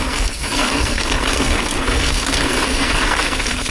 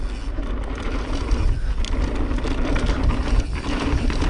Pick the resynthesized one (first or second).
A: first